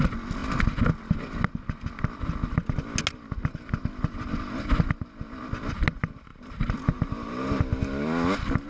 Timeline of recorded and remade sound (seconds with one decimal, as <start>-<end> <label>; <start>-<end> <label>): 0.0-6.3 recorded; 6.3-7.6 remade; 7.6-8.7 recorded